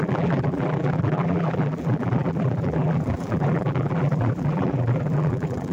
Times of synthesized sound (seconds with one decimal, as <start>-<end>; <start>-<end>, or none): 0.0-5.7